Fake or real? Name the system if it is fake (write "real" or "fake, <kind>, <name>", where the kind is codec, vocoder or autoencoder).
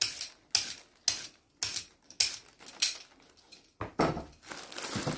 real